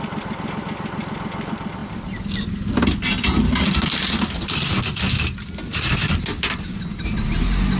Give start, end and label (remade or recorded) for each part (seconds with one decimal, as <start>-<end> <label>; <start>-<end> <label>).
0.0-7.8 recorded